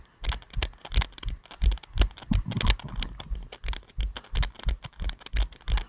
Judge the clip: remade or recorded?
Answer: recorded